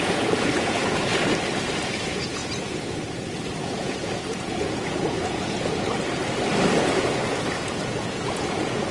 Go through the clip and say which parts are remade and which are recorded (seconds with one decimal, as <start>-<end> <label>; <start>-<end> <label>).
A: 0.0-1.1 remade; 1.1-1.8 recorded; 1.8-2.4 remade; 2.4-3.6 recorded; 3.6-6.2 remade; 6.2-6.8 recorded; 6.8-8.9 remade